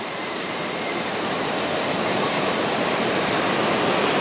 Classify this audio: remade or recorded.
remade